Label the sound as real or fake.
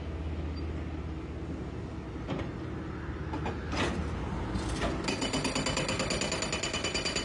real